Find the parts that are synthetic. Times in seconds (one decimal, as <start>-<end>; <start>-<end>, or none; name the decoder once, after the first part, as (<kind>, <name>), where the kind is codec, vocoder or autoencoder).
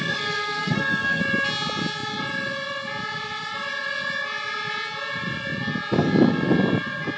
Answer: 0.0-1.2 (codec, SNAC)